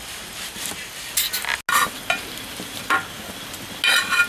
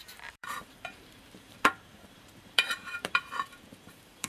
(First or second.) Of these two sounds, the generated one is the second